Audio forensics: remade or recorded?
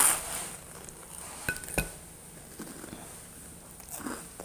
recorded